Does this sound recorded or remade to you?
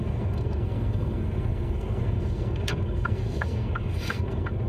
remade